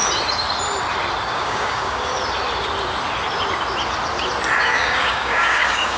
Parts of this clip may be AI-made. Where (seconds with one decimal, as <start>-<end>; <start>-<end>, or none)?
1.3-2.1; 4.6-6.0